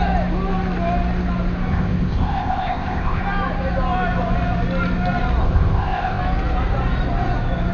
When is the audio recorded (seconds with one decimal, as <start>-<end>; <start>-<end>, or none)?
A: 0.0-1.7; 3.2-5.4; 6.2-7.7